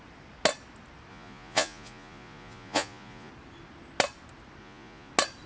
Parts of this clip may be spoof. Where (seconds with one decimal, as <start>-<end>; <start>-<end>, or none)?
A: 1.1-3.3; 4.6-5.1